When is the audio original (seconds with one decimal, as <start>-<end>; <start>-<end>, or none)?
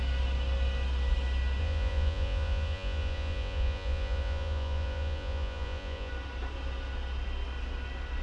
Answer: 0.0-1.6; 6.1-8.2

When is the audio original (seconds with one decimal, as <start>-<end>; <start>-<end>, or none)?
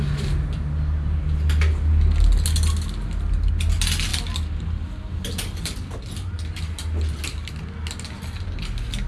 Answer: 0.0-9.1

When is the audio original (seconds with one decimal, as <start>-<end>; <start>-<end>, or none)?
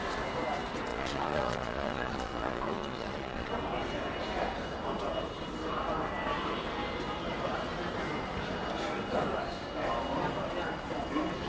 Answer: 0.0-0.9; 3.5-11.5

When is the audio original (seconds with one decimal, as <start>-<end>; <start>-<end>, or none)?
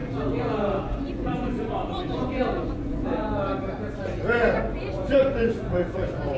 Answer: 0.0-0.8; 3.2-3.9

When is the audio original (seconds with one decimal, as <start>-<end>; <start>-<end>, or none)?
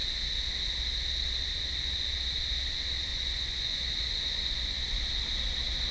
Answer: 0.0-3.1; 5.0-5.9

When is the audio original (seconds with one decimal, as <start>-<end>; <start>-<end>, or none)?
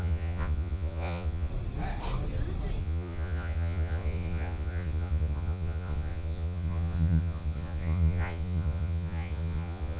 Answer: 1.5-2.8